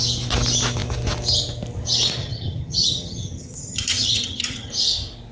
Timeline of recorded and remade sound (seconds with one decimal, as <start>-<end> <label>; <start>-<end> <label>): 0.0-2.2 recorded; 2.2-4.7 remade; 4.7-5.3 recorded

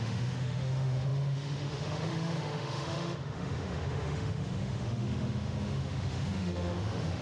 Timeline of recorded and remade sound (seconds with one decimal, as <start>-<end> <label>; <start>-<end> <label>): 0.0-7.2 remade

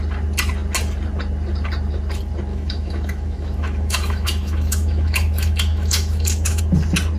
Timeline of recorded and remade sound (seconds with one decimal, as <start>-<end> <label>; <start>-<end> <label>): 0.0-2.5 recorded; 2.5-6.6 remade; 6.6-7.2 recorded